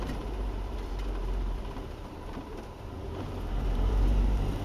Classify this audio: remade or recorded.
remade